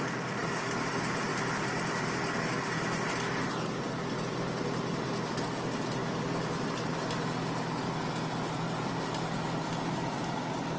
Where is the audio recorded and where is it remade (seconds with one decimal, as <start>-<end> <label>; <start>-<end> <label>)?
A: 0.0-10.8 recorded